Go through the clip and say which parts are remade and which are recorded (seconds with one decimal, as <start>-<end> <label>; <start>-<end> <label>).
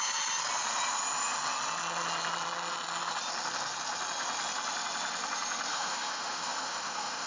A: 0.0-5.7 recorded; 5.7-7.3 remade